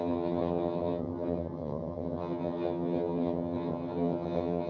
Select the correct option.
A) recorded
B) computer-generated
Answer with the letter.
B